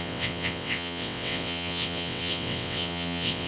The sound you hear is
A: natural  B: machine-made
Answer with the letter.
B